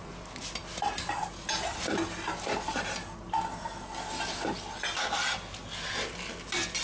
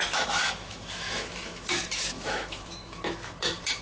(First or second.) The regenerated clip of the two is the second